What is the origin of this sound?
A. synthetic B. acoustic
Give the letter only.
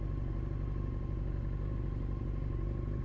B